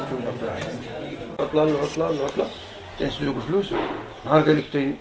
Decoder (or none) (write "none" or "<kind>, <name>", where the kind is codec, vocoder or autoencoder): none